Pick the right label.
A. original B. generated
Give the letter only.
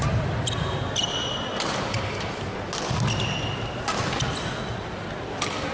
A